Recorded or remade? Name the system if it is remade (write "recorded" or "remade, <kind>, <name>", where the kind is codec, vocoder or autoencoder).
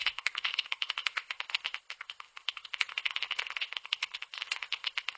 remade, codec, ZipCodec